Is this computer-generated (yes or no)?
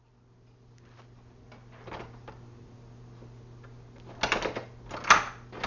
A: no